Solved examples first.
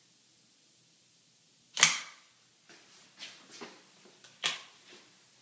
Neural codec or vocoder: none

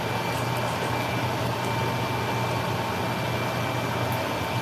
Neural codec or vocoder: none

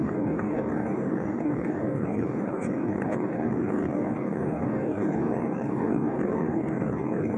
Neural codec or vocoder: codec, DAC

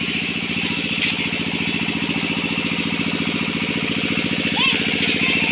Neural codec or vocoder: none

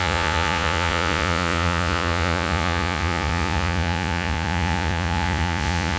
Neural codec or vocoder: vocoder, Vocos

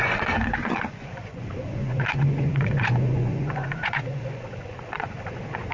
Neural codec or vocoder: vocoder, Vocos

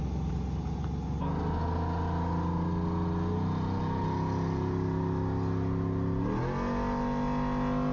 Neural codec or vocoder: none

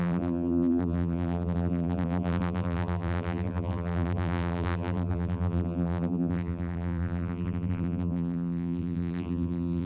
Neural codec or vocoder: vocoder, BigVGAN v2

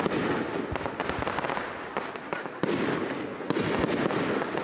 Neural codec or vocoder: none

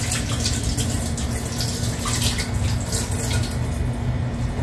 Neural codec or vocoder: none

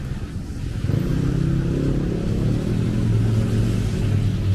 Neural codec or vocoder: none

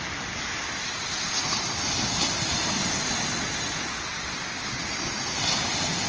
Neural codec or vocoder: none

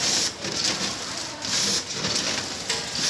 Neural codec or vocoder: none